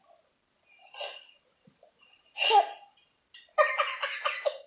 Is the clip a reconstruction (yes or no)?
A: no